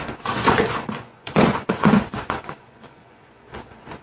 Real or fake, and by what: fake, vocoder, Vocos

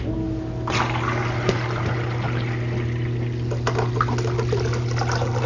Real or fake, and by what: real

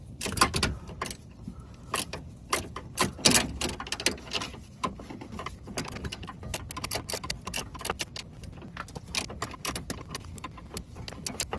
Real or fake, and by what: real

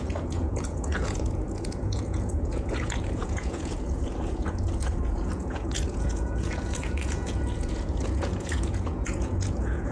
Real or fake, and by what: fake, vocoder, Vocos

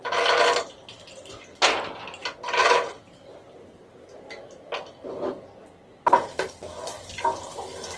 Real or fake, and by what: real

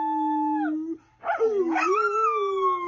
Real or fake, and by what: real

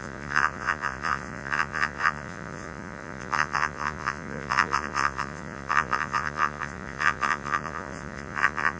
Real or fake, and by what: fake, vocoder, Vocos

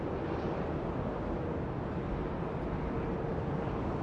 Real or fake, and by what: real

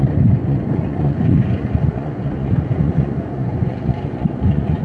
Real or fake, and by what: fake, vocoder, Vocos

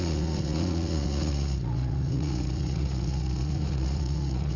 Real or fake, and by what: fake, vocoder, Vocos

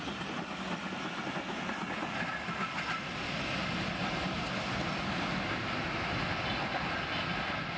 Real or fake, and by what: real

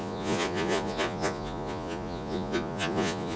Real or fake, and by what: fake, vocoder, Vocos